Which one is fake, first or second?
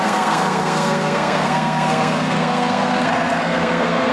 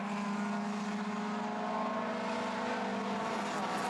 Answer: first